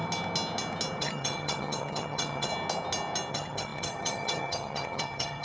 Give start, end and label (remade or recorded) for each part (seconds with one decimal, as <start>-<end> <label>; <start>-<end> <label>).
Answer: 0.0-1.0 recorded; 1.0-2.5 remade; 2.5-3.3 recorded; 3.3-5.4 remade